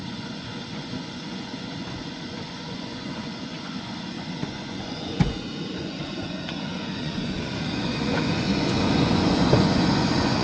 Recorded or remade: remade